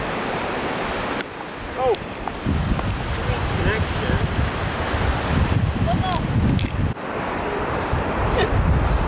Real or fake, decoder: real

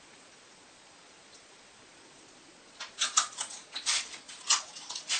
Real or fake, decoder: fake, vocoder, Vocos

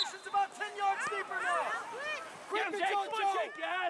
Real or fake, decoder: real